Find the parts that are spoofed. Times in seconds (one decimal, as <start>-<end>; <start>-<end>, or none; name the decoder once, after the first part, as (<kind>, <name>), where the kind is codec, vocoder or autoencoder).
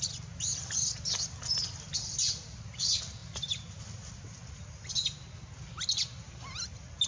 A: none